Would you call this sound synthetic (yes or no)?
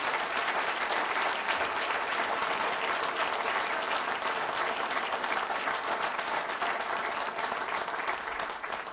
no